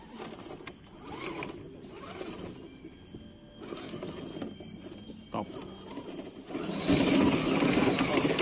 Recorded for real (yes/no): yes